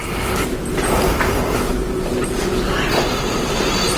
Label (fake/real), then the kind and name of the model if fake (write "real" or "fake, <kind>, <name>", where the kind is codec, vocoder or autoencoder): real